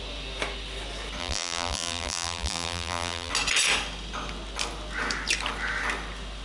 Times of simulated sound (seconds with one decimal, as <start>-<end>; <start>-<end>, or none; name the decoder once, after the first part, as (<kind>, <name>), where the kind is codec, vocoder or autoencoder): 1.2-3.3 (vocoder, BigVGAN v2)